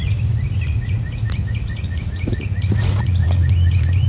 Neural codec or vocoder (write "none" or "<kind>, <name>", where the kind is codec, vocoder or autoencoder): vocoder, Vocos